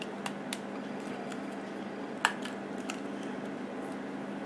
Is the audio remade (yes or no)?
no